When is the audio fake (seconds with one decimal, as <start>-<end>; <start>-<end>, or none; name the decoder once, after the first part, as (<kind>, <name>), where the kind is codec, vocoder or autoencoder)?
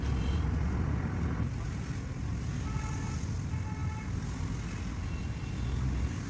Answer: none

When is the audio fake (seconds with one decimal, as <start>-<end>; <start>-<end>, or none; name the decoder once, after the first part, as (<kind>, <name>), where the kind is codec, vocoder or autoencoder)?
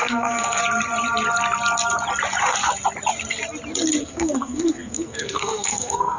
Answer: 0.0-0.6 (codec, SNAC); 4.0-6.2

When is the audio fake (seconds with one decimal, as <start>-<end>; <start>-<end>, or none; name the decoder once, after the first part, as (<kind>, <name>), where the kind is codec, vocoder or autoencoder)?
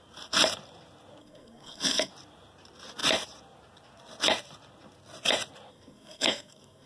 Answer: 1.2-2.1 (codec, SNAC); 5.7-6.9